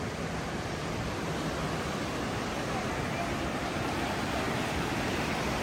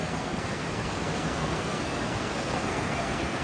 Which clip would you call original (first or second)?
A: first